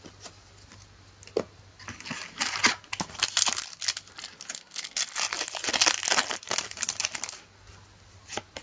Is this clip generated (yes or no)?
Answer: no